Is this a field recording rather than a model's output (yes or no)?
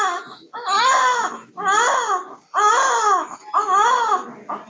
yes